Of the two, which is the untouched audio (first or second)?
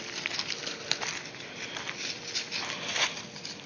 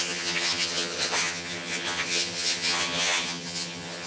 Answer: first